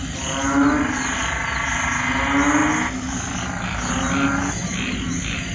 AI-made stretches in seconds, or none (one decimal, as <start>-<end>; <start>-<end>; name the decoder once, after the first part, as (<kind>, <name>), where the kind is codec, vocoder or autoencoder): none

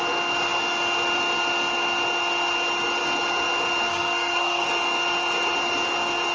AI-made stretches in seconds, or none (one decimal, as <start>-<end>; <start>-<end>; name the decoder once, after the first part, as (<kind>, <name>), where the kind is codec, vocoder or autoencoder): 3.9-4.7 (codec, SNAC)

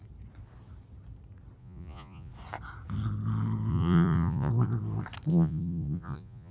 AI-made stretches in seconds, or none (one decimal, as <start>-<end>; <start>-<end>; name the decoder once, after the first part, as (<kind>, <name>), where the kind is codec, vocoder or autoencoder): 1.6-2.3 (vocoder, Vocos); 3.7-4.5; 5.3-6.5

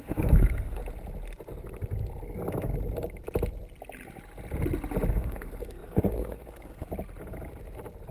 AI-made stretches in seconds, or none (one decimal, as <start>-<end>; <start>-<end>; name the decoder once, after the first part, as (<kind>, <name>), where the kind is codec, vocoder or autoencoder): 0.0-0.8 (codec, SNAC); 5.1-6.9

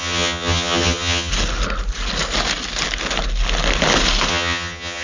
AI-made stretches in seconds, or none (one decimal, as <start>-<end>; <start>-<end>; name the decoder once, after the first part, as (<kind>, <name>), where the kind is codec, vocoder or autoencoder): 0.0-1.3 (vocoder, HiFi-GAN); 4.3-5.0

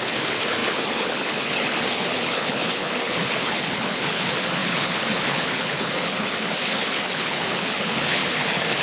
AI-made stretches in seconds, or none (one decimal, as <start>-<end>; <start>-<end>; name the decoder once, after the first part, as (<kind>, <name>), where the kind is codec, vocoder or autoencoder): 0.0-8.8 (codec, HILCodec)

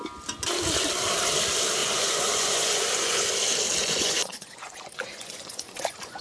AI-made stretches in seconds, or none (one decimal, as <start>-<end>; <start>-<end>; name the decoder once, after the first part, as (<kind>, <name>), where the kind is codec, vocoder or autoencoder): 1.8-3.3 (vocoder, Vocos); 3.8-6.2

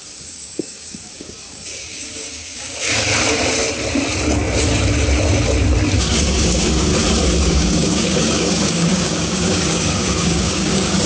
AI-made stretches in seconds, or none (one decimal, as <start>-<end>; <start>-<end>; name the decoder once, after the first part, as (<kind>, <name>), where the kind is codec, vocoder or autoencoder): 0.0-3.1 (codec, DAC); 6.0-6.9; 7.4-11.1